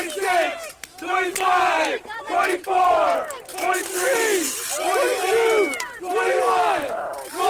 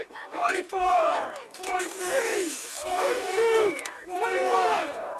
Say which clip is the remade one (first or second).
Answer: second